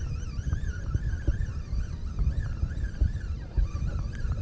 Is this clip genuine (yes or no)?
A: yes